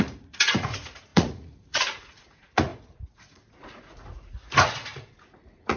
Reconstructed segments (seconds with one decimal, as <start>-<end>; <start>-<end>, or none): 0.0-5.8